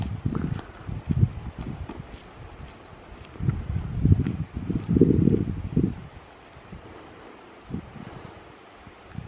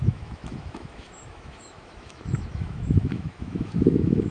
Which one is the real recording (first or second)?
first